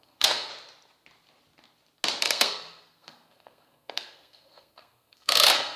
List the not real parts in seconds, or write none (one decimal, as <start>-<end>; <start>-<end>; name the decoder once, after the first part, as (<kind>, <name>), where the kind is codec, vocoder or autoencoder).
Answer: 0.0-0.5 (codec, SNAC); 2.2-5.8